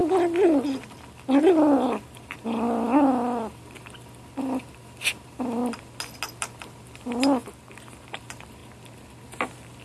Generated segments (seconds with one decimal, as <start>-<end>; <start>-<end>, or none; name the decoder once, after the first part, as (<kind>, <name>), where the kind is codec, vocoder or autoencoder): 1.4-5.6 (vocoder, BigVGAN v2); 6.4-8.6